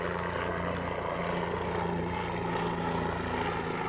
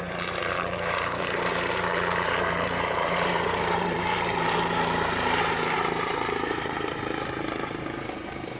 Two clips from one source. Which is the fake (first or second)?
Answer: second